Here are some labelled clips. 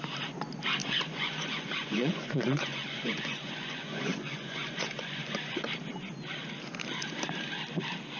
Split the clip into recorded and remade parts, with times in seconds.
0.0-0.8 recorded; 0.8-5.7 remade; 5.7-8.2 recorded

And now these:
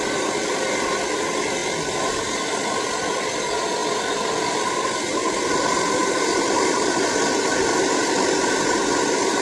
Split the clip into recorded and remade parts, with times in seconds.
0.0-3.8 recorded; 3.8-5.0 remade; 5.0-6.0 recorded; 6.0-6.9 remade; 6.9-9.4 recorded

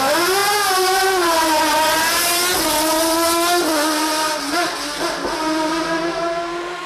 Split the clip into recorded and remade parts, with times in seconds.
0.0-6.9 recorded

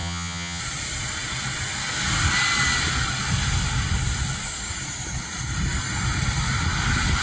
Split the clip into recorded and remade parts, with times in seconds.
0.0-0.6 remade; 0.6-7.2 recorded

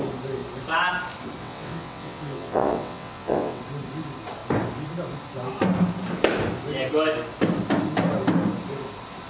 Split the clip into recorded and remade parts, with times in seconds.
0.0-1.4 recorded; 1.4-3.6 remade; 3.6-9.3 recorded